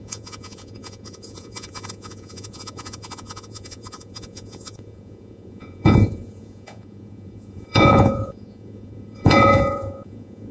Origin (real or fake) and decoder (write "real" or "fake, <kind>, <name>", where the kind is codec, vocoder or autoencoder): fake, vocoder, Vocos